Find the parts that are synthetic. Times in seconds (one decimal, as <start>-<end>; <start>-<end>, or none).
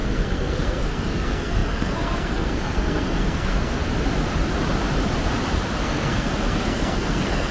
0.0-3.8; 5.8-7.5